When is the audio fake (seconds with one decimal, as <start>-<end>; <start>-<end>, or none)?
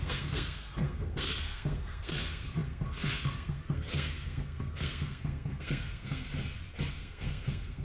0.0-6.3; 6.9-7.8